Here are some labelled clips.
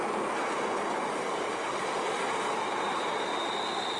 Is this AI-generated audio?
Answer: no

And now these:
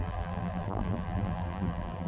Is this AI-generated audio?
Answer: yes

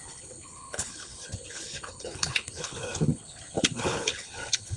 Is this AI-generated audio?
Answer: yes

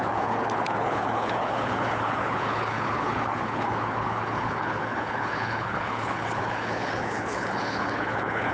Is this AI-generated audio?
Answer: yes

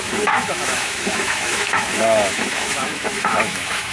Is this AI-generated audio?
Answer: yes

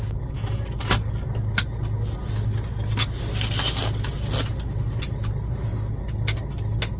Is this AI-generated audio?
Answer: no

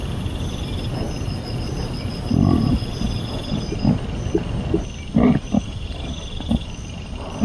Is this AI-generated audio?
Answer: yes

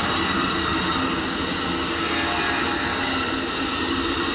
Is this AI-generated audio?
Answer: no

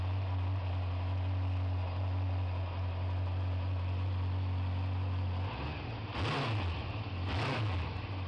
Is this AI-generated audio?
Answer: no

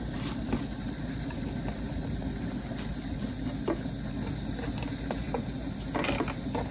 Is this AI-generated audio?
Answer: no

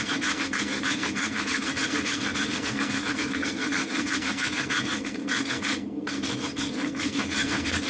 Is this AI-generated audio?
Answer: yes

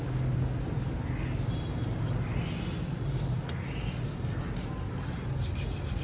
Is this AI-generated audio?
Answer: no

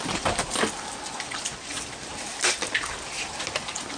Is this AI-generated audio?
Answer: no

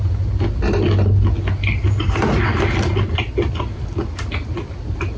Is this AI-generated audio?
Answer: no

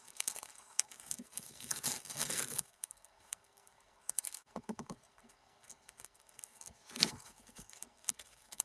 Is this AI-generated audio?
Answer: yes